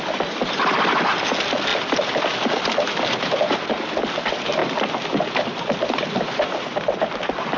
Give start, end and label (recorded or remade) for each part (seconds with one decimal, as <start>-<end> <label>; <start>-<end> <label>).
0.0-7.6 remade

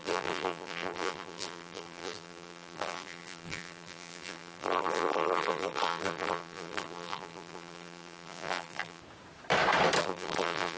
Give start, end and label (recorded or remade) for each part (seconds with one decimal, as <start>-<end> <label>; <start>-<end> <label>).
0.0-9.0 remade; 9.0-10.0 recorded; 10.0-10.8 remade